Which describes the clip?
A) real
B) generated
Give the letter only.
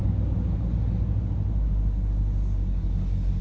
A